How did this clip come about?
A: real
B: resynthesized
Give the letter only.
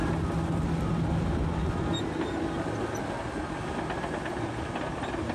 A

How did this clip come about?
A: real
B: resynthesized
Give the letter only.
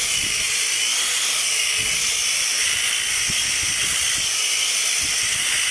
A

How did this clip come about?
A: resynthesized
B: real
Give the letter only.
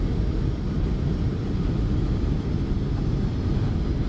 B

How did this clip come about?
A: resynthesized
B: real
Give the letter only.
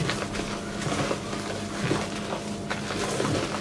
B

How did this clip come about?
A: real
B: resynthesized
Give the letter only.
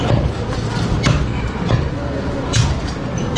A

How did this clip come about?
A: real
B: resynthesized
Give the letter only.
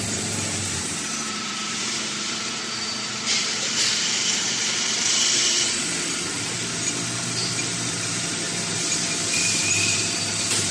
B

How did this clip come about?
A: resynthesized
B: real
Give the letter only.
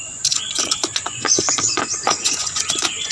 A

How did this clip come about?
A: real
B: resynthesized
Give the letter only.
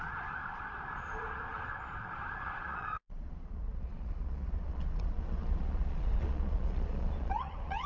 B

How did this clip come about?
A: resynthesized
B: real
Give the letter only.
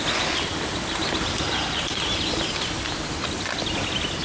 B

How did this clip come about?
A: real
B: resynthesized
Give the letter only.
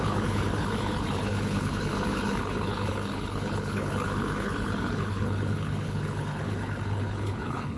B